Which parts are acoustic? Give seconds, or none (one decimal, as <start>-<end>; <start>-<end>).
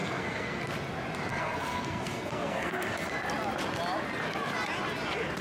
0.6-1.3; 3.1-5.4